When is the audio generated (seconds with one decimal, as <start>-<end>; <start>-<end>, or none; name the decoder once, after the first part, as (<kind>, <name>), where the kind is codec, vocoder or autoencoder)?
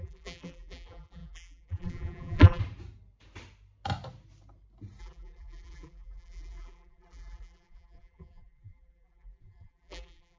0.0-2.6 (vocoder, BigVGAN v2); 5.0-10.4